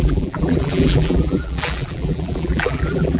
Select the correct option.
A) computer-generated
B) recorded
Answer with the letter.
A